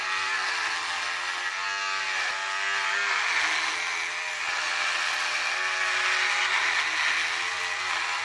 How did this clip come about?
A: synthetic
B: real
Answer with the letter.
B